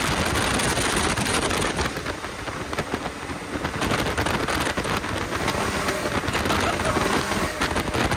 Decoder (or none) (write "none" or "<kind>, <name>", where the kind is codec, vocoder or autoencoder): none